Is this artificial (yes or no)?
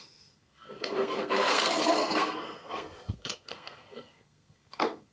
yes